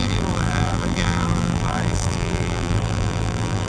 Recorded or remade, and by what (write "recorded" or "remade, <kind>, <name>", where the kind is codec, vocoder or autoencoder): remade, vocoder, BigVGAN v2